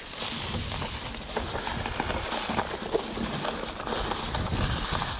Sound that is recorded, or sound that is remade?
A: recorded